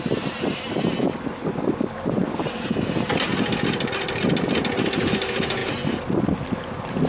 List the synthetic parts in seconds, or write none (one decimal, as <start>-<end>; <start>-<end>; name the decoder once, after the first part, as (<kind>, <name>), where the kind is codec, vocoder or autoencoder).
none